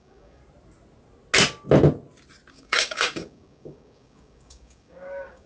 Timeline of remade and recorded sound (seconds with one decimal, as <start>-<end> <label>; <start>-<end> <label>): 0.0-0.4 remade; 0.4-2.5 recorded; 2.5-5.5 remade